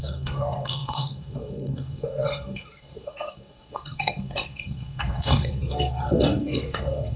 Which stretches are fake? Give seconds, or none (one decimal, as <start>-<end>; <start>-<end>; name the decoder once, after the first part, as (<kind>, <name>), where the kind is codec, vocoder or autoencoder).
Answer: 0.0-7.2 (codec, SNAC)